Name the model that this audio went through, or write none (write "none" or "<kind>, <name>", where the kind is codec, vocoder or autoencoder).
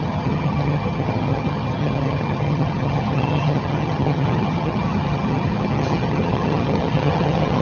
vocoder, HiFi-GAN